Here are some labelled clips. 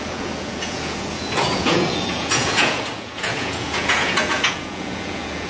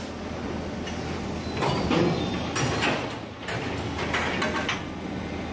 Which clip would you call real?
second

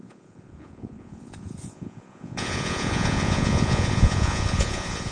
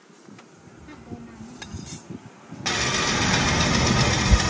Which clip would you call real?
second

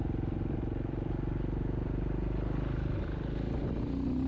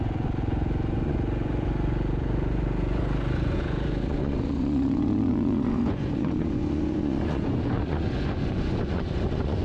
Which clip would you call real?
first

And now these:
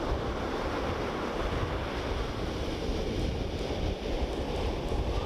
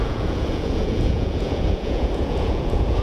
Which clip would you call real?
first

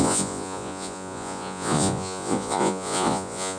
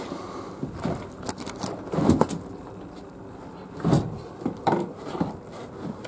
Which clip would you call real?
second